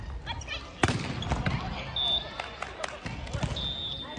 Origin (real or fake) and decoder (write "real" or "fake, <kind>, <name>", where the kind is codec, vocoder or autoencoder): real